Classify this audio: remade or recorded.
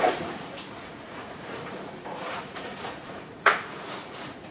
remade